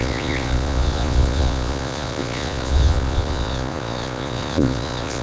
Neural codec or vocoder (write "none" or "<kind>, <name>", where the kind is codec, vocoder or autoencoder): vocoder, Vocos